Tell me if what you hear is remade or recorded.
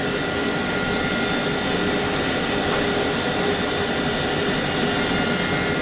recorded